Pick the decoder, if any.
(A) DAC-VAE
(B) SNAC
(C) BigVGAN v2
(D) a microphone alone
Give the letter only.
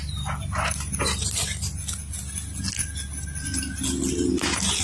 D